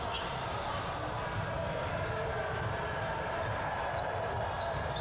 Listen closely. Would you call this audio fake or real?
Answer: real